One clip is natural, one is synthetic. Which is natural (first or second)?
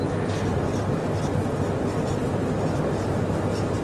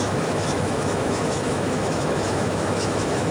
first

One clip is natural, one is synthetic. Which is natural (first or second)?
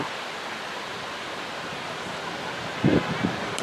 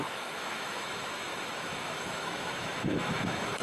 first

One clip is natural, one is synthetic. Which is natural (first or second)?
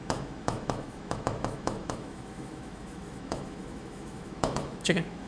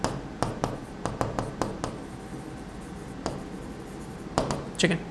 second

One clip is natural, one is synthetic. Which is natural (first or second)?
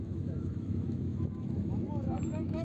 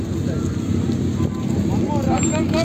second